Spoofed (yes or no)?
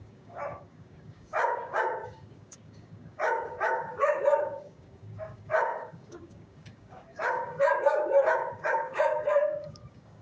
yes